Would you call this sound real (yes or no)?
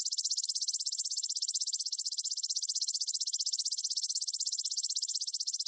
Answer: no